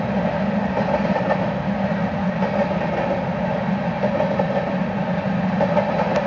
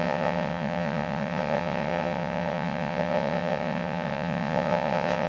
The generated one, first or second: second